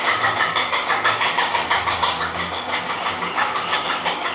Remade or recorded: remade